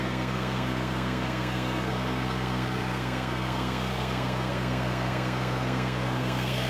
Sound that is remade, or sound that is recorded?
remade